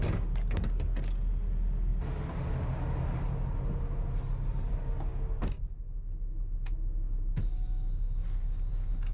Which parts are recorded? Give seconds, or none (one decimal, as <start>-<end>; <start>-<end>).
0.0-9.1